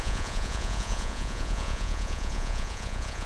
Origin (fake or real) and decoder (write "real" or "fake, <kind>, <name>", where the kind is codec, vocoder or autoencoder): fake, vocoder, Vocos